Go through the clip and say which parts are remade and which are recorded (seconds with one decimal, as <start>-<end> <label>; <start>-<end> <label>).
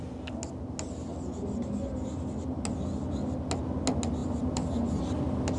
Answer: 0.0-5.6 recorded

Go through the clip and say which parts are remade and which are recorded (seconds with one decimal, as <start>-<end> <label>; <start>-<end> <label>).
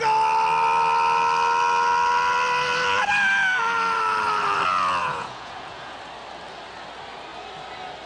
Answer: 0.0-5.0 recorded; 5.0-6.0 remade; 6.0-8.1 recorded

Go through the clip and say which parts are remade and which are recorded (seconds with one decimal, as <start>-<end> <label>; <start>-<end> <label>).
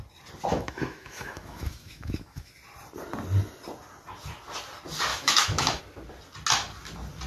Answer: 0.0-0.5 recorded; 0.5-2.5 remade; 2.5-5.1 recorded; 5.1-5.8 remade; 5.8-7.3 recorded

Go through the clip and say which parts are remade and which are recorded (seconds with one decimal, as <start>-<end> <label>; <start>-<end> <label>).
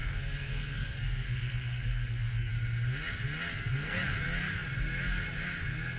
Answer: 0.0-2.5 remade; 2.5-3.5 recorded; 3.5-4.1 remade; 4.1-6.0 recorded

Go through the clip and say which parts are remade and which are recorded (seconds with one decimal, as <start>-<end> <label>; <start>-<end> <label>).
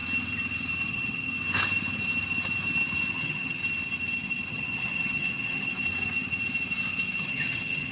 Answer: 0.0-0.9 recorded; 0.9-1.3 remade; 1.3-3.1 recorded; 3.1-3.6 remade; 3.6-4.5 recorded; 4.5-5.7 remade; 5.7-7.2 recorded; 7.2-7.9 remade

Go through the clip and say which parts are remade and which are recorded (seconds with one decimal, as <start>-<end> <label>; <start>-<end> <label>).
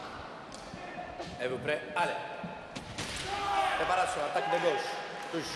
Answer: 0.0-3.4 remade; 3.4-5.6 recorded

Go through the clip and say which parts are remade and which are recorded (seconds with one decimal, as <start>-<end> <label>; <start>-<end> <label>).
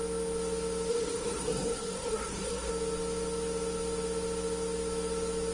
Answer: 0.0-0.9 recorded; 0.9-2.7 remade; 2.7-5.5 recorded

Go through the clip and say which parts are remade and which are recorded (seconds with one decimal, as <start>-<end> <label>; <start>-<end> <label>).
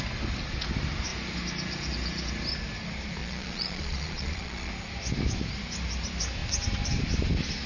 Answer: 0.0-3.2 recorded; 3.2-4.7 remade; 4.7-7.7 recorded